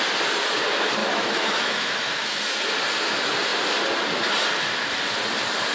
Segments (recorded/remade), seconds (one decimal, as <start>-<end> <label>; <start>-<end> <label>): 0.0-1.0 recorded; 1.0-2.4 remade; 2.4-5.7 recorded